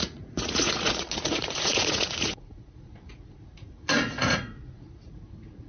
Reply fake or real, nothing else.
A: fake